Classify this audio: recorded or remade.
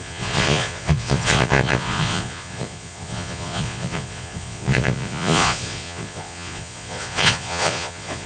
remade